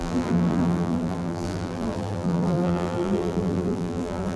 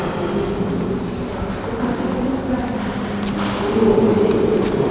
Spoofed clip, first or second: first